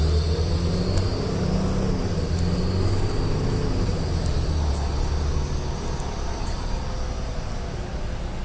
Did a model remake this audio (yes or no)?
no